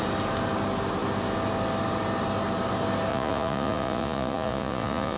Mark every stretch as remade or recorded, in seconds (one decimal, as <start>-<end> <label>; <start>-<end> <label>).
0.0-3.1 recorded; 3.1-5.2 remade